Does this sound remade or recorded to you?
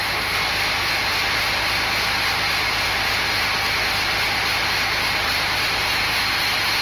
recorded